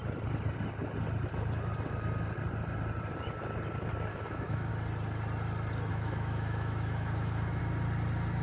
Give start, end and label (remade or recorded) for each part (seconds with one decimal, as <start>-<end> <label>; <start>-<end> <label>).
0.0-4.1 recorded; 4.1-4.7 remade; 4.7-5.9 recorded; 5.9-7.6 remade; 7.6-8.4 recorded